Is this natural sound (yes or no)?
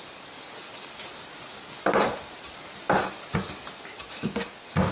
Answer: yes